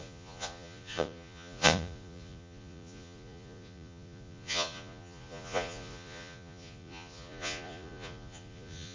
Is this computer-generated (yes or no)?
yes